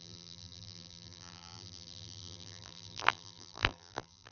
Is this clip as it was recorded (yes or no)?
no